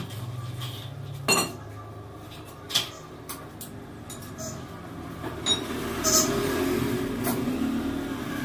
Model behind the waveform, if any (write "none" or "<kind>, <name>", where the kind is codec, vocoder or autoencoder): none